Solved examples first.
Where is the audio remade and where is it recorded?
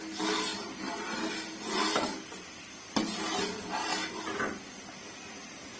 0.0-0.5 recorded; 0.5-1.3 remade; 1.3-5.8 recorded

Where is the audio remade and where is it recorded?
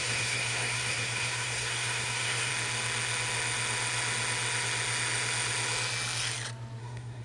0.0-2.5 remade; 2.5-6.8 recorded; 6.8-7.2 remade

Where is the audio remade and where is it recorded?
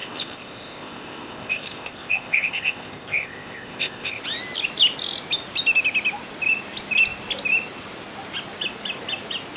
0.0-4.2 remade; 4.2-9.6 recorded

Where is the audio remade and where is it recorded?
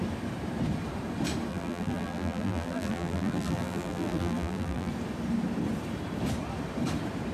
0.0-1.5 recorded; 1.5-4.9 remade; 4.9-7.3 recorded